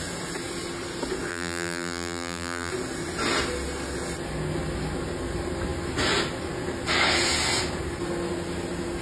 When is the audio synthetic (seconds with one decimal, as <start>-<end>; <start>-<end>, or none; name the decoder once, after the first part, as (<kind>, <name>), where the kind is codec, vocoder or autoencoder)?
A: 1.3-2.7 (vocoder, BigVGAN v2)